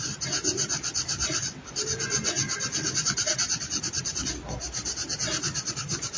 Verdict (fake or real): real